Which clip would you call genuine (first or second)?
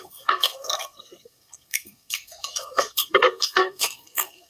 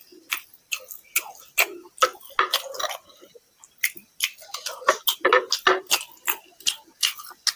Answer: second